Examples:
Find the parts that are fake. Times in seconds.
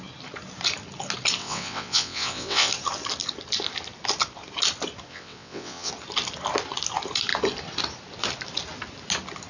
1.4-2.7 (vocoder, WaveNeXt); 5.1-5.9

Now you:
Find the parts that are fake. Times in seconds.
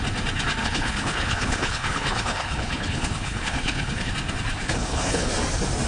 0.6-4.1 (codec, HILCodec); 4.6-5.3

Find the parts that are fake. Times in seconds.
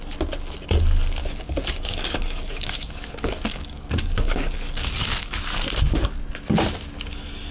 1.2-5.4 (codec, DAC)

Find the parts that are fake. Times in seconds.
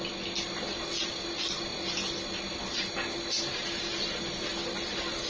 none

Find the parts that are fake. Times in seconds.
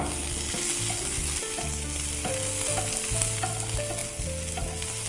none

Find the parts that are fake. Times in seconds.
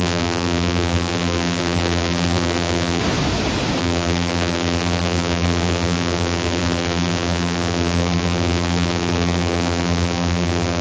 0.0-3.0 (vocoder, BigVGAN v2); 3.8-10.8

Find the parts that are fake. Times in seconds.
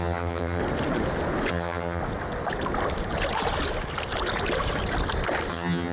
0.0-0.6 (vocoder, HiFi-GAN); 1.5-2.0; 5.5-5.9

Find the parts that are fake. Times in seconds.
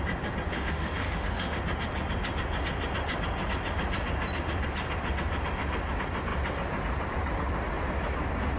0.5-1.6 (autoencoder, DAC-VAE)